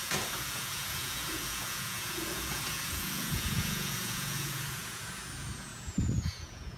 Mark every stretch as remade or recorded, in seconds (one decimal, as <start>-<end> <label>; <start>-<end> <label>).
0.0-6.8 remade